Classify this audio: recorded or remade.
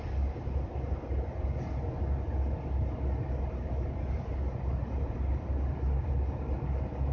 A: recorded